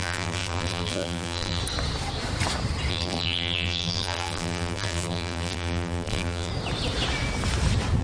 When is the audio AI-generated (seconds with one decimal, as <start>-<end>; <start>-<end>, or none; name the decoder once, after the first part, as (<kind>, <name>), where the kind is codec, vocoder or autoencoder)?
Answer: 0.0-1.6 (vocoder, BigVGAN v2); 2.9-6.5